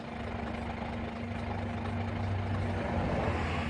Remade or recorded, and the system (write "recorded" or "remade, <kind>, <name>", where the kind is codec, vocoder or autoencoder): recorded